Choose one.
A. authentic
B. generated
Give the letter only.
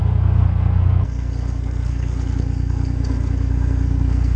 B